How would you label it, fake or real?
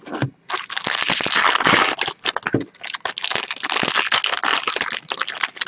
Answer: real